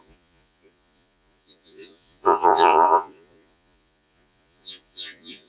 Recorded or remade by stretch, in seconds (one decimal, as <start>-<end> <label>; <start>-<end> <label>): 0.0-5.5 remade